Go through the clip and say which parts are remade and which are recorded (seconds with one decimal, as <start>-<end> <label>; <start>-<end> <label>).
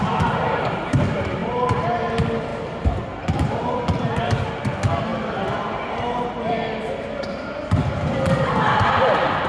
0.0-1.4 recorded; 1.4-2.1 remade; 2.1-2.5 recorded; 2.5-4.1 remade; 4.1-5.1 recorded; 5.1-5.7 remade; 5.7-9.5 recorded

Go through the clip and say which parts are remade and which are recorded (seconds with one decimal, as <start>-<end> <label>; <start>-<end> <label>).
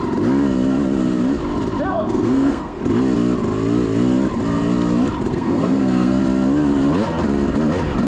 0.0-1.9 recorded; 1.9-2.8 remade; 2.8-5.3 recorded; 5.3-6.2 remade; 6.2-8.1 recorded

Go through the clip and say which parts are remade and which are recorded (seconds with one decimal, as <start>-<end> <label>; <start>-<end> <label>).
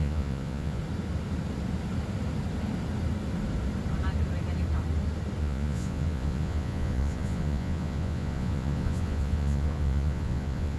0.0-0.8 remade; 0.8-5.4 recorded; 5.4-10.8 remade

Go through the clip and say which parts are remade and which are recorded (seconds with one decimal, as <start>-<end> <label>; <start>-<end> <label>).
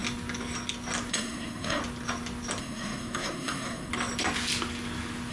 0.0-1.1 recorded; 1.1-1.8 remade; 1.8-2.6 recorded; 2.6-3.9 remade; 3.9-5.3 recorded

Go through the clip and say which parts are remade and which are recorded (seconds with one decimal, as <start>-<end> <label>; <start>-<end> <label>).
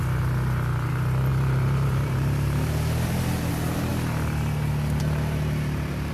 0.0-3.9 remade; 3.9-5.0 recorded; 5.0-6.1 remade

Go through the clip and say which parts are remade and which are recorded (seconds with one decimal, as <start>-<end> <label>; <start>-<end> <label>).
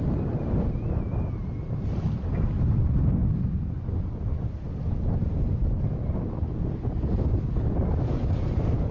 0.0-8.9 recorded